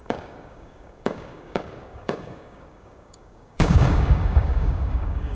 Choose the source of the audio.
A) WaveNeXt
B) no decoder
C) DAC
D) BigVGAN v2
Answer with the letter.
C